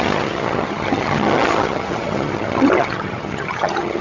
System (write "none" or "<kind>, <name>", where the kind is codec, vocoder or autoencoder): vocoder, HiFi-GAN